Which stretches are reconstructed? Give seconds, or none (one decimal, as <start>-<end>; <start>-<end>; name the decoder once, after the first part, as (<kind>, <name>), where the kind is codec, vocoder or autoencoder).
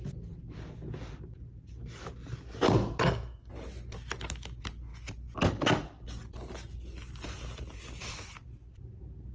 3.0-3.5 (codec, SNAC)